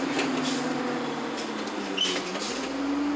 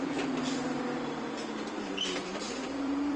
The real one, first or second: first